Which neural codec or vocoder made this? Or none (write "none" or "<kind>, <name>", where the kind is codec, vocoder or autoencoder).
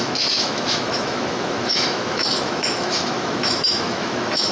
autoencoder, DAC-VAE